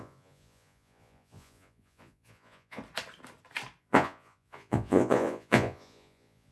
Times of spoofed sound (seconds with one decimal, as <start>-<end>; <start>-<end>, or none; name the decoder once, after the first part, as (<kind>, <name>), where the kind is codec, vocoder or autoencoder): 0.0-2.8 (vocoder, Vocos); 3.8-6.5